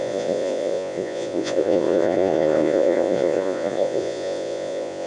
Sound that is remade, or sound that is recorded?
remade